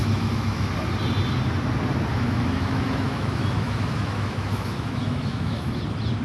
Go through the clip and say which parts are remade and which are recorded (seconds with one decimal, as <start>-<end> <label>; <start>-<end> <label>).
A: 0.0-0.7 remade; 0.7-2.1 recorded; 2.1-5.7 remade; 5.7-6.2 recorded